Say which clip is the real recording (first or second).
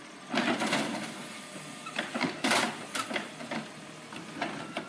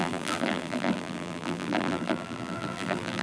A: first